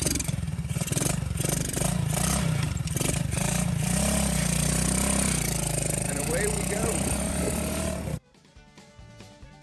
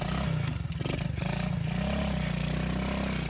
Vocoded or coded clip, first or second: first